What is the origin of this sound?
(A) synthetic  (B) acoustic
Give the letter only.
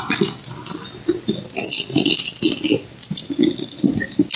B